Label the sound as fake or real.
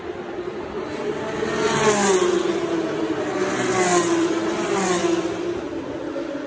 real